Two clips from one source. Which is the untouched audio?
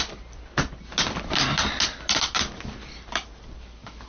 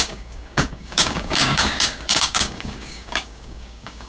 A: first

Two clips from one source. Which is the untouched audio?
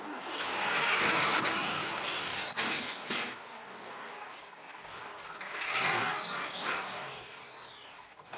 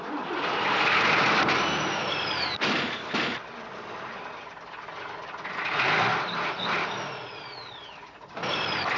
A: second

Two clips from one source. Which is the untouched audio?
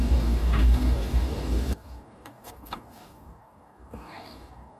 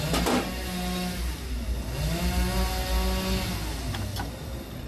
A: second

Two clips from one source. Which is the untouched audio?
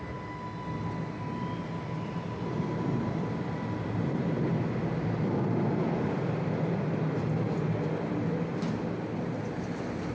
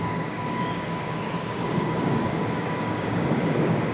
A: first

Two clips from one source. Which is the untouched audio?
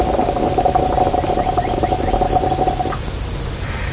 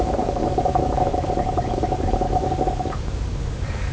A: first